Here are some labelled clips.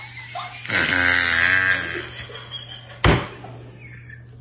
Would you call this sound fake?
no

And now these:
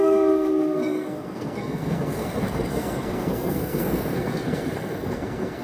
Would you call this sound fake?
yes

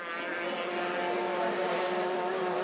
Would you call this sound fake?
no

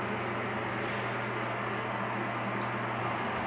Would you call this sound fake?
no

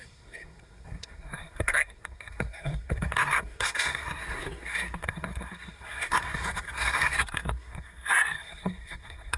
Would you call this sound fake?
yes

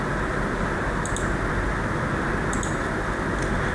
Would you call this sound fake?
no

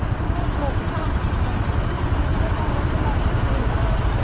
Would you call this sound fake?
no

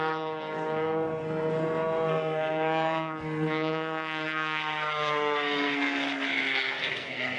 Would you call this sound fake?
yes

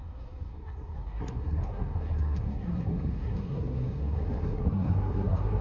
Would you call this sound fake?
yes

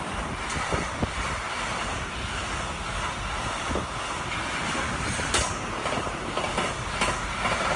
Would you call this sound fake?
no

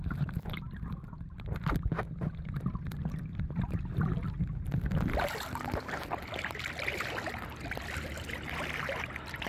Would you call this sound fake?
no